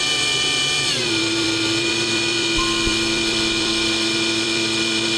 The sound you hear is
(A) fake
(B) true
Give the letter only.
A